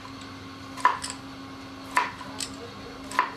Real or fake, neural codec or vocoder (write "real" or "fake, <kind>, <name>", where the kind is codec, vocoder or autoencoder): real